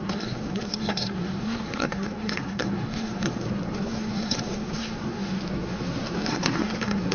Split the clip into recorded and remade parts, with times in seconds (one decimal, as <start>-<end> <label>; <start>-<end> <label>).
0.0-7.1 remade